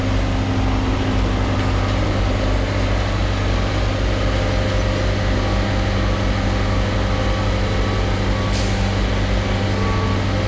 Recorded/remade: recorded